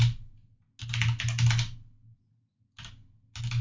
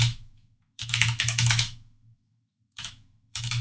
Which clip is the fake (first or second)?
second